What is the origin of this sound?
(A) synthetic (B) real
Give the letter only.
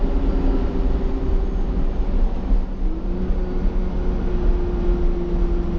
B